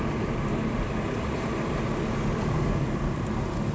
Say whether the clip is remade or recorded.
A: recorded